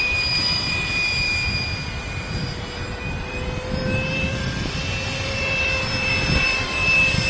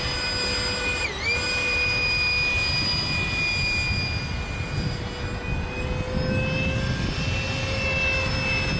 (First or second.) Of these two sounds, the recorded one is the second